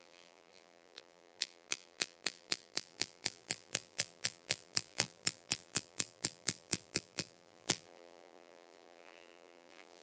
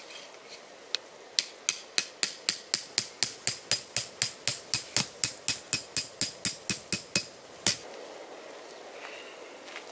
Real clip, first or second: second